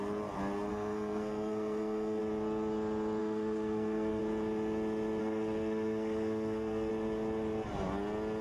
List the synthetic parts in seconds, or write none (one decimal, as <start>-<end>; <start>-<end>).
0.7-2.2; 3.2-4.2; 5.2-6.9

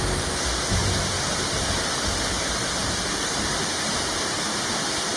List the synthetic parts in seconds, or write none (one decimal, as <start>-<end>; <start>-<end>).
0.8-1.3; 3.6-4.3

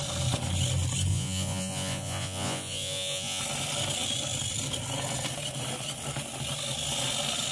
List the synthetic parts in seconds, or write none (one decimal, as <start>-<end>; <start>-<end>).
1.1-3.4

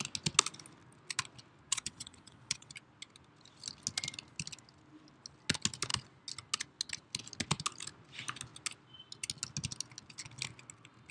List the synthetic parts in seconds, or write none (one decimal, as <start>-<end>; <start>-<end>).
1.7-2.7

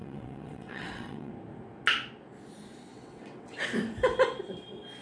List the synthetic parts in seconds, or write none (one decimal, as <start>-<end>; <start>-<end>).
0.0-1.3; 2.9-3.6

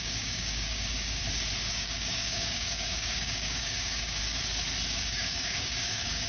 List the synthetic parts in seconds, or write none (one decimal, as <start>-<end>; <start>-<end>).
0.0-1.2; 1.7-4.2; 4.9-6.3

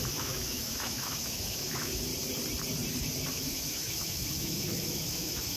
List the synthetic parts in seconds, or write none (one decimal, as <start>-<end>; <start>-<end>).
0.0-2.1; 3.3-5.6

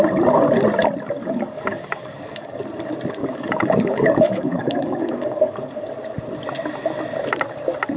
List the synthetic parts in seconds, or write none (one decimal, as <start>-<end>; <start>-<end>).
1.2-2.6; 3.2-5.9